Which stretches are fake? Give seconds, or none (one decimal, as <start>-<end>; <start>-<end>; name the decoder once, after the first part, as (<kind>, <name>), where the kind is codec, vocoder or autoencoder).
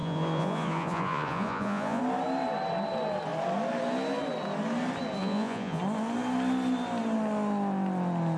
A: 0.0-2.0 (vocoder, Vocos); 5.2-5.8